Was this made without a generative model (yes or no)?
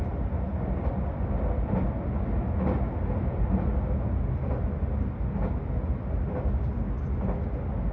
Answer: yes